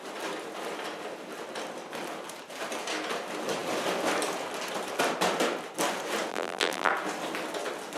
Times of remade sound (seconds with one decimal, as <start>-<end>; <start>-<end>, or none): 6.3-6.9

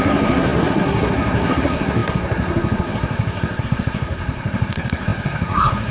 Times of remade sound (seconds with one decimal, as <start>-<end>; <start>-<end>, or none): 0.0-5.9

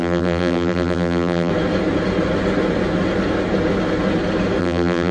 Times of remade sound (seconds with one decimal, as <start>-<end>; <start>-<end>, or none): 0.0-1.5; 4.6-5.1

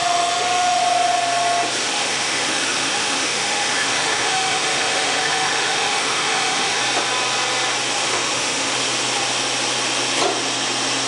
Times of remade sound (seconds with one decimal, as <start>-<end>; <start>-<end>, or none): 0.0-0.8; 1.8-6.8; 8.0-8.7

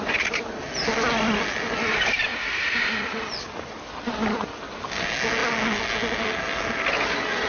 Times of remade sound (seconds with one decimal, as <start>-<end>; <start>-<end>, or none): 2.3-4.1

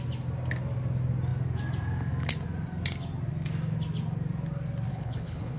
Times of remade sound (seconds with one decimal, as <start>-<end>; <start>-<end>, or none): 4.9-5.6

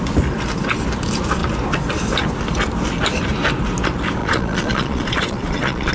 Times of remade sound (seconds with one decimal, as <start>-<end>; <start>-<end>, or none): 4.2-5.9

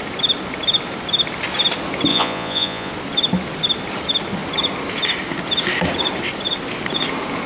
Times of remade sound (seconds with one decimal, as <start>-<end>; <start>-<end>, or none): 2.1-2.9